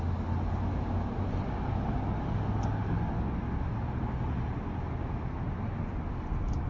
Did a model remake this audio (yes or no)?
no